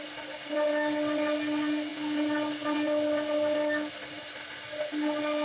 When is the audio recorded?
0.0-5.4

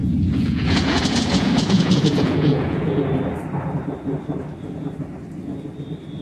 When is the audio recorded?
3.0-6.2

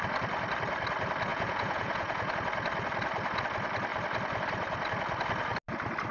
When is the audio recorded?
0.0-1.3; 2.3-6.1

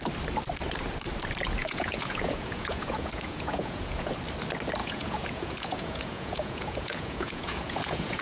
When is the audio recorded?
0.0-1.6; 4.1-4.8

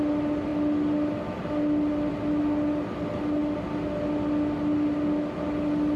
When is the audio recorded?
0.0-6.0

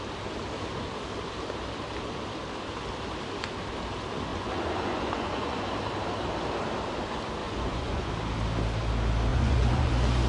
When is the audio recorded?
0.0-4.3; 5.6-7.4; 8.1-9.3; 9.9-10.3

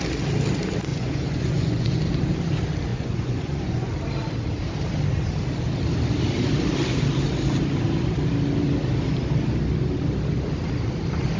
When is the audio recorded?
0.0-0.9; 2.0-2.9; 3.9-11.4